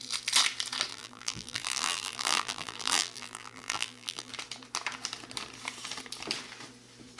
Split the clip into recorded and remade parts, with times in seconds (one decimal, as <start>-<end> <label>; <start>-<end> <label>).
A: 0.0-0.9 recorded; 0.9-4.3 remade; 4.3-7.2 recorded